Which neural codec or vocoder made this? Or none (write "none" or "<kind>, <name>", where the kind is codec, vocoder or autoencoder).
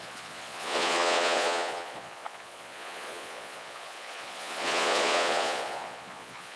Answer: vocoder, Vocos